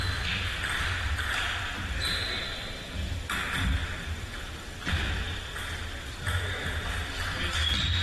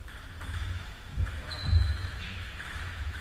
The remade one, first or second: second